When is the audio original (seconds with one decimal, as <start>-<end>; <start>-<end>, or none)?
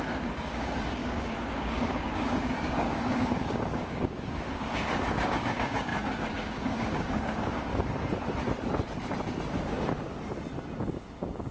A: 7.7-11.5